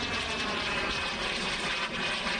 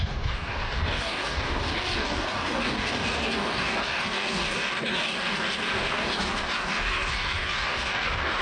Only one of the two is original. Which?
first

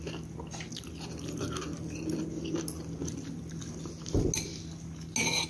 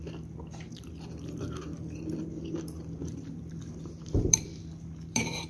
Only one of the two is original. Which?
first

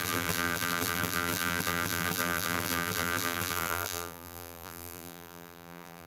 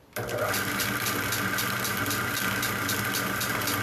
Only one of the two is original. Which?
second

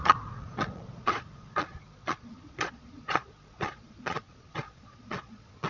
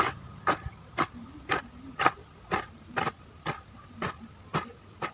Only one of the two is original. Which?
second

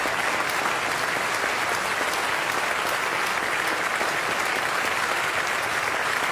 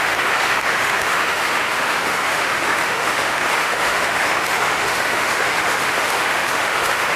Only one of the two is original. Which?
first